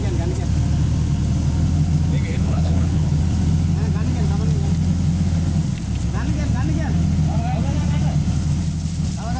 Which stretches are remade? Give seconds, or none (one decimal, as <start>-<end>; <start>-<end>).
2.3-3.2